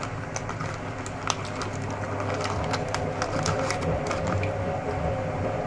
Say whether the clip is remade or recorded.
recorded